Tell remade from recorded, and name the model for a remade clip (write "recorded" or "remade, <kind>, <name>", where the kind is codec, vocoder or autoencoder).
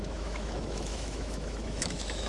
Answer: remade, autoencoder, DAC-VAE